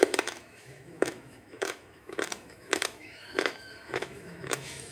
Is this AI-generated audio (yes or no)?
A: yes